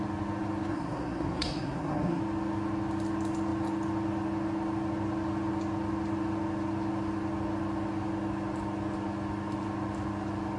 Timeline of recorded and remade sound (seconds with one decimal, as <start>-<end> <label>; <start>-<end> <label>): 0.0-0.7 recorded; 0.7-2.2 remade; 2.2-10.6 recorded